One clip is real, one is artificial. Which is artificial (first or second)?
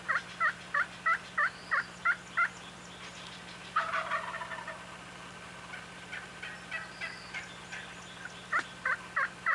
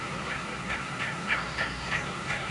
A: second